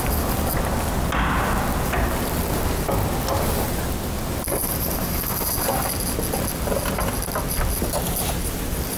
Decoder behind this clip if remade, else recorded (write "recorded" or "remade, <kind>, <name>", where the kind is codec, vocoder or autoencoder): recorded